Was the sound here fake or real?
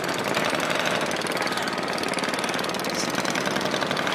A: real